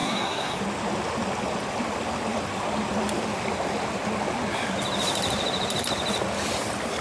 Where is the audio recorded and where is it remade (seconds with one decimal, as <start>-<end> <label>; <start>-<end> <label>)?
0.0-0.6 remade; 0.6-7.0 recorded